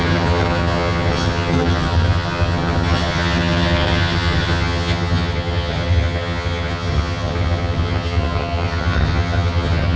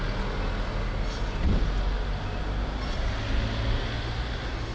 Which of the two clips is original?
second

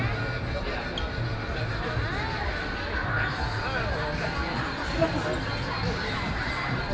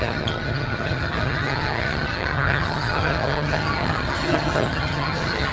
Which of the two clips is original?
first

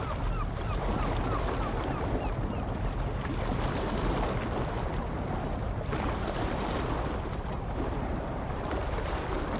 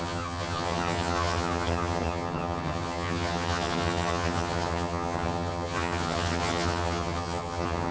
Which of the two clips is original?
first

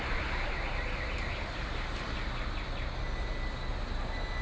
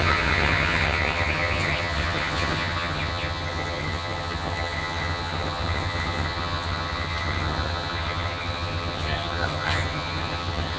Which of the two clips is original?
first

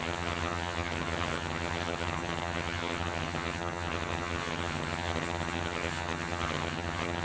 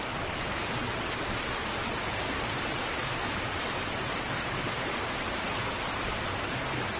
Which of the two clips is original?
second